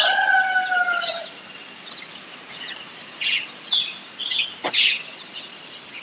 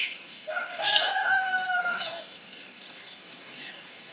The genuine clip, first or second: first